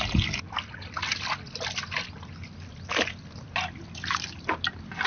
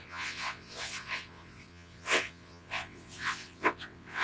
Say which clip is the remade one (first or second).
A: second